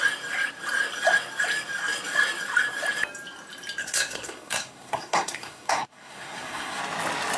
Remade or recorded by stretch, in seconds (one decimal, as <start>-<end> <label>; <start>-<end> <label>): 0.0-3.8 recorded; 3.8-6.8 remade; 6.8-7.4 recorded